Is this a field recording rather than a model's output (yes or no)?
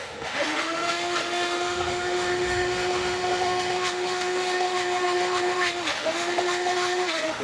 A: no